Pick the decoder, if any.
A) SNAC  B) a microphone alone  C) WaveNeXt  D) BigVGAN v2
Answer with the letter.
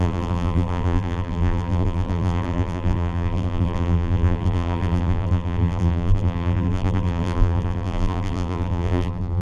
D